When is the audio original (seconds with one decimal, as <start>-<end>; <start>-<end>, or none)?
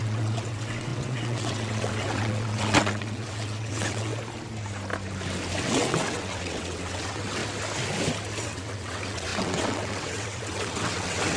4.1-5.6; 7.4-8.4